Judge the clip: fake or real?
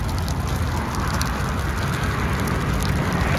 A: real